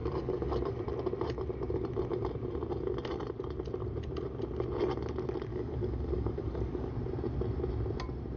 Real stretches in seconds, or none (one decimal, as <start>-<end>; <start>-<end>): 0.8-5.5; 6.9-8.4